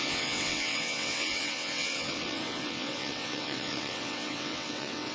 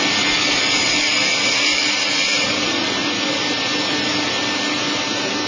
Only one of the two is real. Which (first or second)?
second